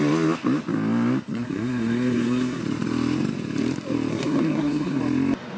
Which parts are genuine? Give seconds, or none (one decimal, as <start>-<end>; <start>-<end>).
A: 0.0-1.3; 2.6-4.1; 5.0-5.6